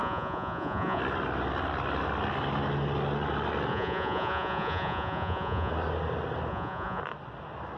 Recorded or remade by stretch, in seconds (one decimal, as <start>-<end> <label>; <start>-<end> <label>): 0.0-1.0 remade; 1.0-3.7 recorded; 3.7-5.7 remade; 5.7-6.5 recorded; 6.5-7.0 remade; 7.0-7.8 recorded